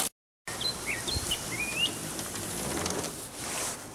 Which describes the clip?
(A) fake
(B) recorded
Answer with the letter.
B